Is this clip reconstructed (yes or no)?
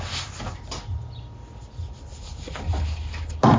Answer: no